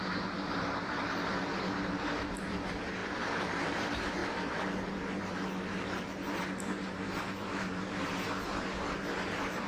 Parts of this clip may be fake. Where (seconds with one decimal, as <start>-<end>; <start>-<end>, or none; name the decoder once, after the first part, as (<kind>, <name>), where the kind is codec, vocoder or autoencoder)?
0.0-9.7 (vocoder, BigVGAN v2)